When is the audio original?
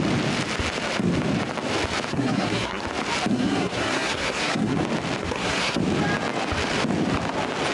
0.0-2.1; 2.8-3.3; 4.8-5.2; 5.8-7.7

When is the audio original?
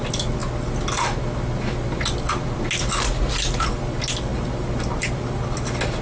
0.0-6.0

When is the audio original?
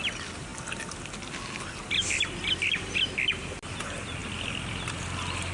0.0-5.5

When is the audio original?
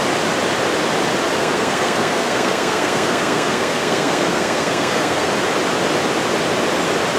0.0-1.4; 5.3-7.2